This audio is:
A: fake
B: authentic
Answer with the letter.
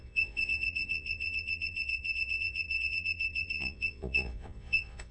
A